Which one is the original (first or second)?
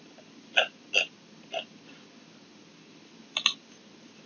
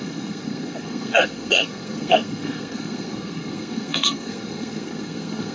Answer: first